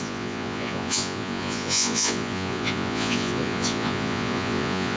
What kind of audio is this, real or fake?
fake